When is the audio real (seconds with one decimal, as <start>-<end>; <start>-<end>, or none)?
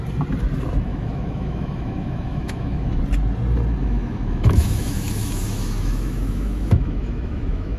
0.0-0.9; 3.0-3.8